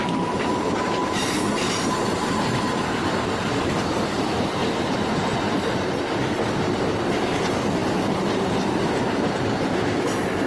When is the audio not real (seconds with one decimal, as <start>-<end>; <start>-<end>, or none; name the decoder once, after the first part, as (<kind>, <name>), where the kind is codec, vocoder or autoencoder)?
1.0-5.5 (vocoder, BigVGAN v2)